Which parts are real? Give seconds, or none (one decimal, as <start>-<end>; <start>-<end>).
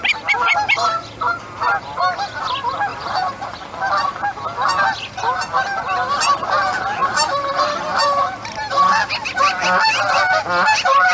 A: 0.0-11.1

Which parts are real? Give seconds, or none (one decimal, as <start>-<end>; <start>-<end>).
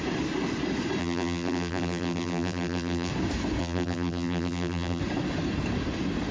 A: 0.0-1.0; 3.1-3.6; 5.0-6.3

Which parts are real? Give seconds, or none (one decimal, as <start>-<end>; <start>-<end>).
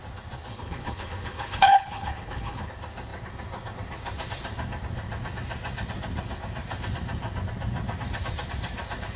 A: 0.0-0.5; 2.7-9.2